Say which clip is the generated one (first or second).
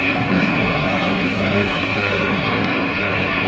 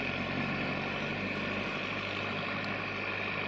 first